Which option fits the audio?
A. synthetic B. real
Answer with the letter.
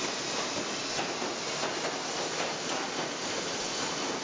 B